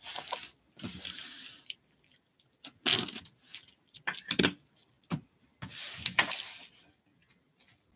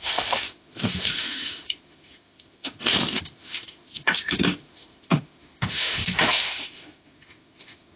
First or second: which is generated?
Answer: second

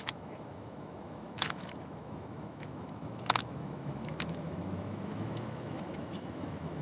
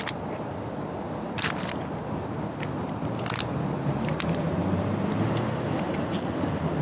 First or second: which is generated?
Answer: first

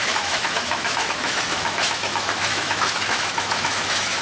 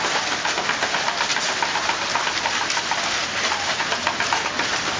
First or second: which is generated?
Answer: first